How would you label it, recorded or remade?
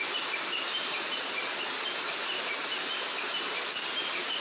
recorded